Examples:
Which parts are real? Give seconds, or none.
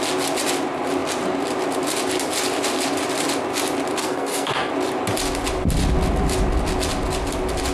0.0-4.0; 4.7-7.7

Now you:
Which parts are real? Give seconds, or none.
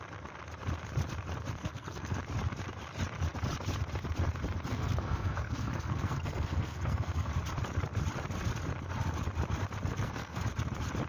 0.0-1.6; 2.2-4.7; 7.3-9.9; 10.4-11.1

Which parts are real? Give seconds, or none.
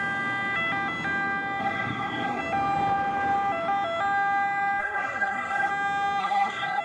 0.0-1.6; 2.4-4.8; 5.7-6.2